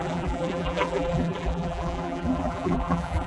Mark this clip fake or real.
fake